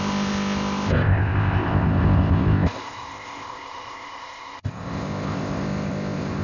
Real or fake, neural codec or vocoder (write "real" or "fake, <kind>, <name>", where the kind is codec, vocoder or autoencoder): fake, codec, ZipCodec